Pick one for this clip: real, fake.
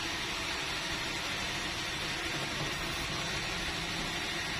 real